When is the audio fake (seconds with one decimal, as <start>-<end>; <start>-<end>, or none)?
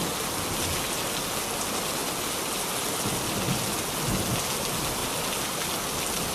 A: none